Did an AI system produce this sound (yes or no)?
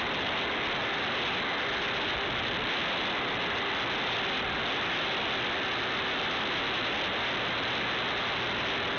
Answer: no